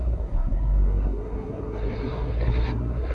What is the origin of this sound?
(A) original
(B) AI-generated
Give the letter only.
B